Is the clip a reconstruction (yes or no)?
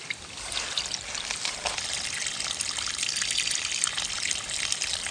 no